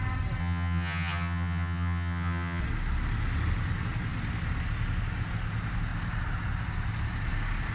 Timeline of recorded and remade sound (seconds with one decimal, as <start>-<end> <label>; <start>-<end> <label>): 0.0-0.4 recorded; 0.4-2.6 remade; 2.6-7.7 recorded